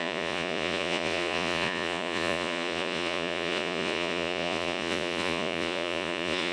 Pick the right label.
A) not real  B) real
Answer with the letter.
A